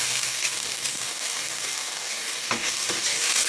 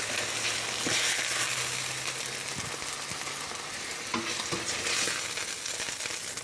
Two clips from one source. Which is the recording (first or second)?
second